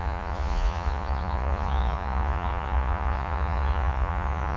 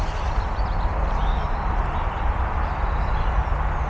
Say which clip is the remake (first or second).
first